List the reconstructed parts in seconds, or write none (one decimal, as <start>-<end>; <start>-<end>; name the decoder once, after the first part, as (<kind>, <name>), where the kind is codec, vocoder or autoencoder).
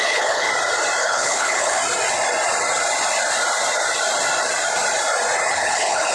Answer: 0.0-0.5 (codec, HILCodec); 1.0-1.8; 5.5-6.1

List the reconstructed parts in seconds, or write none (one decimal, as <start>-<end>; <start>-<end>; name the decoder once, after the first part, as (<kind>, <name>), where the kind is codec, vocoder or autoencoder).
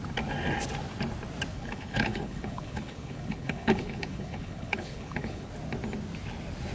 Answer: 1.5-5.5 (codec, HILCodec)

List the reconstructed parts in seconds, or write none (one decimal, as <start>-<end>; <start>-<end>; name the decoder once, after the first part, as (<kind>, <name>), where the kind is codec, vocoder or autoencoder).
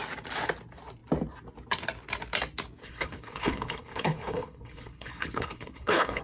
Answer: 2.8-6.2 (codec, HILCodec)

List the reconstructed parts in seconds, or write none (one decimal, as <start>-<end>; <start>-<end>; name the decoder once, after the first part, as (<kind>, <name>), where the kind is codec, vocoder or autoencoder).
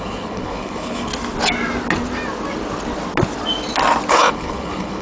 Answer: 0.0-1.1 (codec, HILCodec); 4.1-5.0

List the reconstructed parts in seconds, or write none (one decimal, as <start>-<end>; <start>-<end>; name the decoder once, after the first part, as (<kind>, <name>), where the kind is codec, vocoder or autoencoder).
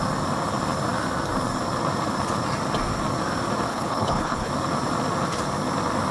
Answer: 3.7-4.5 (codec, HILCodec)